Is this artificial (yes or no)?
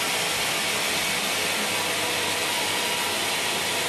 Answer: no